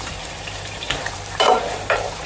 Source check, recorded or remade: remade